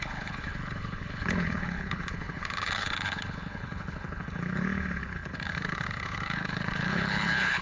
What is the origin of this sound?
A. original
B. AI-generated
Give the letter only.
B